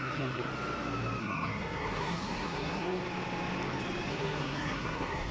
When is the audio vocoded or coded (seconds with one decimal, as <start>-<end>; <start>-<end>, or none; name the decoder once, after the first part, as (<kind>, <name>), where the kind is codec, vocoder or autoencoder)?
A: 0.0-0.5 (codec, SNAC); 1.2-3.0; 4.1-5.3